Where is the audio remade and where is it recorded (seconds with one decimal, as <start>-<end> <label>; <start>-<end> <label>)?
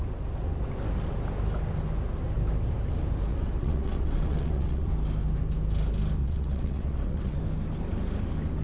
0.0-3.3 recorded; 3.3-4.9 remade; 4.9-6.2 recorded; 6.2-7.4 remade; 7.4-8.6 recorded